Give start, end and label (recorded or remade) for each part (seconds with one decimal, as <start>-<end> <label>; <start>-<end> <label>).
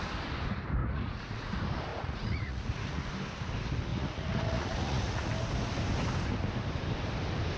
0.0-0.8 recorded; 0.8-1.5 remade; 1.5-1.9 recorded; 1.9-3.1 remade; 3.1-3.9 recorded; 3.9-5.3 remade; 5.3-7.6 recorded